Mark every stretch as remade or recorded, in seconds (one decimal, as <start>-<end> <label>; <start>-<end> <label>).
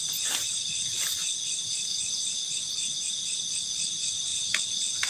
0.0-5.1 recorded